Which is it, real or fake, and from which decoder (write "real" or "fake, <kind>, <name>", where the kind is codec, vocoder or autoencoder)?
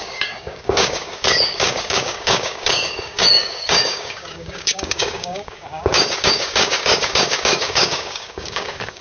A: fake, codec, DAC